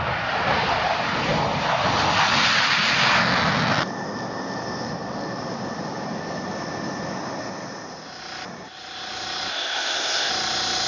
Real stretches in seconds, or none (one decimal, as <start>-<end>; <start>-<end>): 0.0-9.5; 10.3-10.9